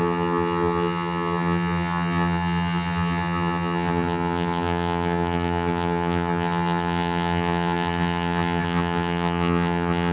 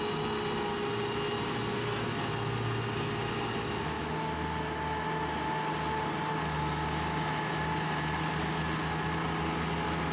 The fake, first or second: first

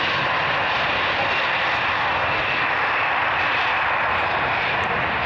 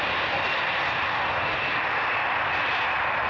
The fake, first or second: first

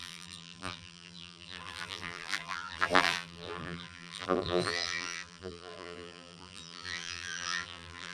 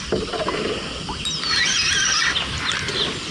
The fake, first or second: first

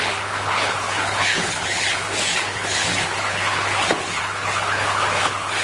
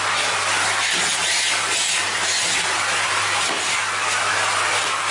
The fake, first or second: first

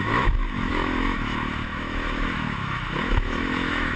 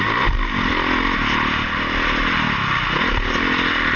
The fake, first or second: first